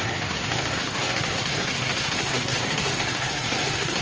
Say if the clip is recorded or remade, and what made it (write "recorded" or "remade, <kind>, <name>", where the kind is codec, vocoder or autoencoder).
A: remade, codec, SNAC